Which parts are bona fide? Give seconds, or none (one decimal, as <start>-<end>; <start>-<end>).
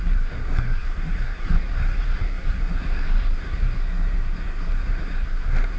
none